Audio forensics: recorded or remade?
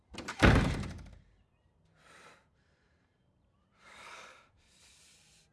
remade